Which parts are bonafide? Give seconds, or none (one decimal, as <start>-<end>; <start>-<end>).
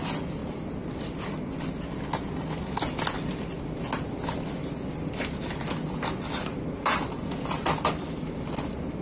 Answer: 0.0-9.0